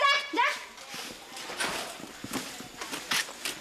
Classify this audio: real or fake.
real